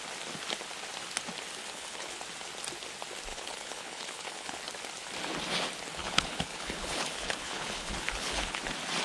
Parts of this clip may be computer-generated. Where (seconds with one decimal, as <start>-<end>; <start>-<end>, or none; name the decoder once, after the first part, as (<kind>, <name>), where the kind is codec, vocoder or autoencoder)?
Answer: 1.6-2.2 (codec, HILCodec); 3.3-4.6; 6.0-8.6